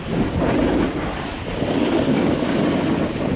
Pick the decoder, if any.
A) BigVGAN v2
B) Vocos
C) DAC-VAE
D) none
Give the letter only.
D